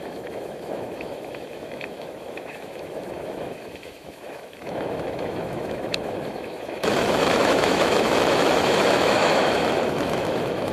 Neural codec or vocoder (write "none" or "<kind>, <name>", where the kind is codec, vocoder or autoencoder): autoencoder, DAC-VAE